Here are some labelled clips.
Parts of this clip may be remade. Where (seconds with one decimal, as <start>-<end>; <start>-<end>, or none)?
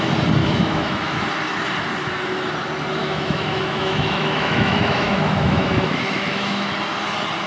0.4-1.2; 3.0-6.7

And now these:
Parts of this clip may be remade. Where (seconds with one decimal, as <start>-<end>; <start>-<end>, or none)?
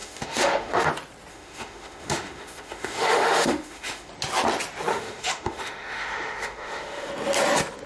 0.0-0.9; 1.3-4.1; 4.9-7.1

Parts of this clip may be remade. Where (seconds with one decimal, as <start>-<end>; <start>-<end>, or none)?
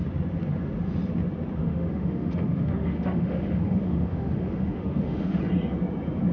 1.6-5.4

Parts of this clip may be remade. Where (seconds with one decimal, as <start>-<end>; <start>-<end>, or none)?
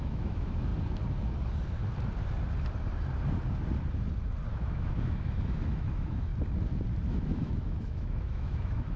0.0-0.7; 4.5-6.3; 7.1-9.0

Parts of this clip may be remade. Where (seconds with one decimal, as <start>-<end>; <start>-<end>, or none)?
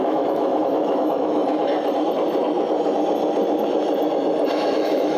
0.0-1.4; 4.5-5.2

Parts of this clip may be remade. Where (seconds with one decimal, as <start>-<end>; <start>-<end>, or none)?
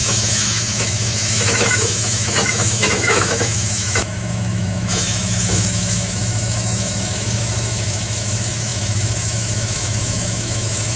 0.0-11.0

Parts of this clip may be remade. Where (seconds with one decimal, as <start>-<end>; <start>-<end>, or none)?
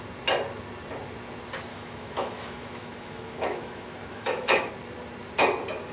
1.7-4.7